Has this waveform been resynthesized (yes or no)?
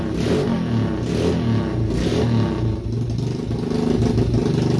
no